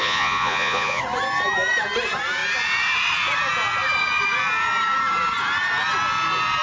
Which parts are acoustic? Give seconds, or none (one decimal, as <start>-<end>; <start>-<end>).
1.0-6.6